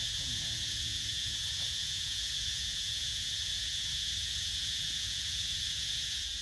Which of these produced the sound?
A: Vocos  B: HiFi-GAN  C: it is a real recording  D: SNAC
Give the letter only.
A